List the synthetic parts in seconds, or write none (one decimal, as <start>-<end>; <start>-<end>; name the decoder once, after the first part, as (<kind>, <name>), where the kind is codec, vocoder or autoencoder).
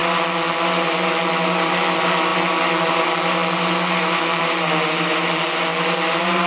none